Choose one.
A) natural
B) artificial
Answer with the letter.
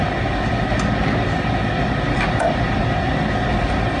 A